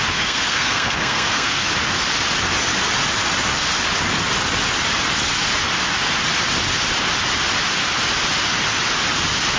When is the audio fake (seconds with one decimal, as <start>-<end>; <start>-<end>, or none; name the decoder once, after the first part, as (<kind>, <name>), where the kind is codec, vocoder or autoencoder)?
0.0-1.7 (codec, SNAC)